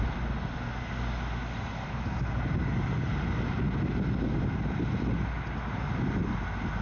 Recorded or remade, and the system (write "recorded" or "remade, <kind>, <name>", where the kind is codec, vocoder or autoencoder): recorded